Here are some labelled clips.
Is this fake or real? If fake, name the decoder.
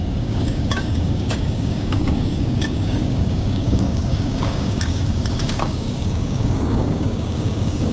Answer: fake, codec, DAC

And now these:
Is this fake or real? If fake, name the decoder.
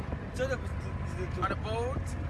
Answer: real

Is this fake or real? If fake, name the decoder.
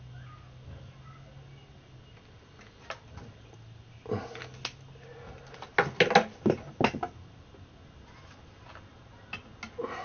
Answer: real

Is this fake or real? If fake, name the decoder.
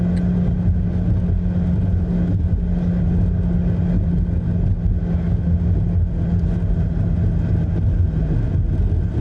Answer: real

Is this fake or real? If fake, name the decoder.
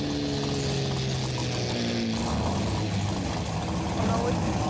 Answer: real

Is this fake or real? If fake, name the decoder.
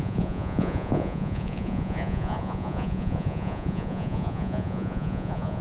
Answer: fake, vocoder, Vocos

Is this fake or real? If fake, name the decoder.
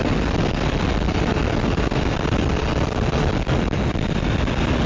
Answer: real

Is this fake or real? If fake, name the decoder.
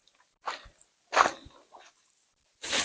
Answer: fake, vocoder, BigVGAN v2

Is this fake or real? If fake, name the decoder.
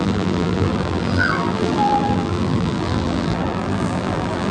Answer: fake, vocoder, BigVGAN v2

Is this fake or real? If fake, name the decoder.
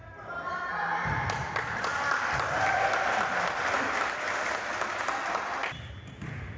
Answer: real